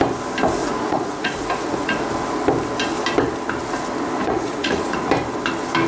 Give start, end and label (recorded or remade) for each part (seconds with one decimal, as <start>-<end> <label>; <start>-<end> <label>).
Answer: 0.0-0.6 recorded; 0.6-2.1 remade; 2.1-4.2 recorded; 4.2-5.1 remade; 5.1-5.9 recorded